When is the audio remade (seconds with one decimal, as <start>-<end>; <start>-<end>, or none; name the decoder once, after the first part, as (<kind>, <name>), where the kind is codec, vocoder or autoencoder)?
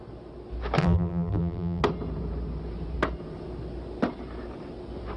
0.8-1.8 (vocoder, BigVGAN v2)